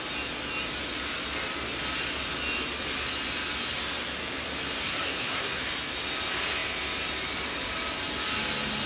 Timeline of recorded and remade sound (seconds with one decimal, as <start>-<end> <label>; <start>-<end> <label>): 0.0-4.8 recorded; 4.8-5.6 remade; 5.6-8.9 recorded